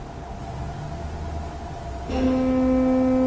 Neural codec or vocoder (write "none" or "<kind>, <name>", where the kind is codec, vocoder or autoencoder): none